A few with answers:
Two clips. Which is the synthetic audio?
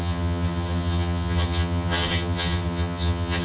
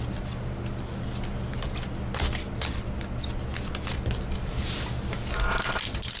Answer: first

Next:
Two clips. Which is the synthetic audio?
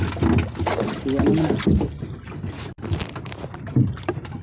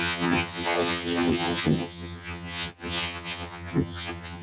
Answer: second